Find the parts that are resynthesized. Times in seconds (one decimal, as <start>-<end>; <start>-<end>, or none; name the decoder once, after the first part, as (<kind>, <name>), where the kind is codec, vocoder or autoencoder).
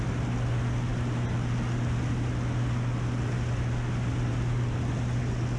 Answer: none